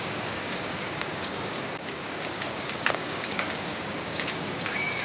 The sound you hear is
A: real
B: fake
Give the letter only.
B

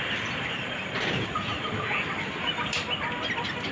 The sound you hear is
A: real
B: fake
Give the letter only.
B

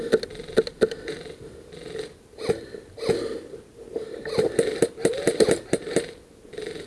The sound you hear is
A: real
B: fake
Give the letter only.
A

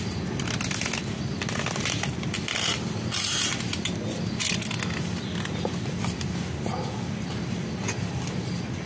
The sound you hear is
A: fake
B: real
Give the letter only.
B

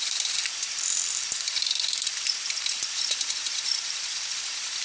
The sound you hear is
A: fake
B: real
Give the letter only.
A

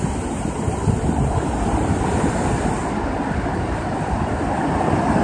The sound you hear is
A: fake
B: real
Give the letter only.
B